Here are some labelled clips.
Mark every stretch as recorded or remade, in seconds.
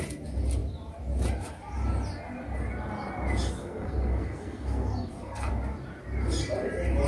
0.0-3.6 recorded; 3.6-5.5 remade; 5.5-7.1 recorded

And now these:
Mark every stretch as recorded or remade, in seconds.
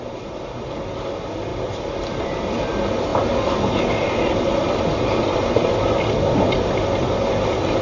0.0-1.5 recorded; 1.5-2.4 remade; 2.4-7.8 recorded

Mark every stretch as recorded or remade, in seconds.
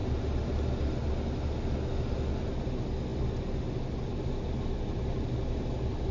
0.0-6.1 recorded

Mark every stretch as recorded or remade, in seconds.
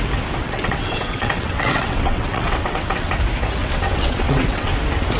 0.0-0.4 recorded; 0.4-3.1 remade; 3.1-3.6 recorded; 3.6-4.7 remade; 4.7-5.2 recorded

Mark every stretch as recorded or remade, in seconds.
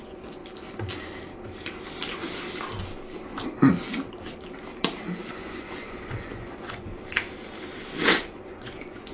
0.0-0.4 remade; 0.4-5.3 recorded; 5.3-6.9 remade; 6.9-8.1 recorded; 8.1-9.1 remade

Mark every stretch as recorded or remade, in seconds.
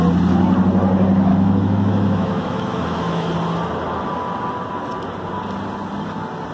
0.0-1.3 recorded; 1.3-3.3 remade; 3.3-6.5 recorded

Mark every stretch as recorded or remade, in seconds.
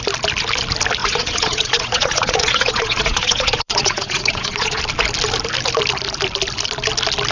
0.0-1.0 recorded; 1.0-4.8 remade; 4.8-7.3 recorded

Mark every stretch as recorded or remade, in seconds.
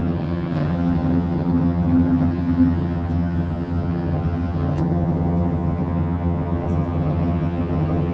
0.0-8.1 remade